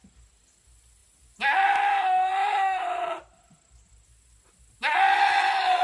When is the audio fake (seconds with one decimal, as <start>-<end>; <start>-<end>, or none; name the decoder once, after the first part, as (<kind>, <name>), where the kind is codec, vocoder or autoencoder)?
none